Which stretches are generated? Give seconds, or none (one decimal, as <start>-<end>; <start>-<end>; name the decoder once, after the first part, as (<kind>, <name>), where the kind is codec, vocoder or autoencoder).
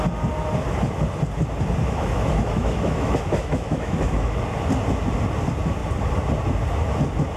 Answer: 1.8-4.4 (autoencoder, DAC-VAE)